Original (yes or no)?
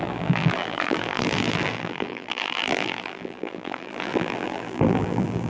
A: no